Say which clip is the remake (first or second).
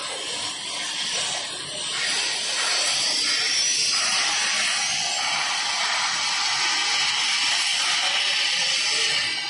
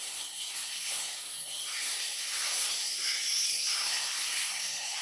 second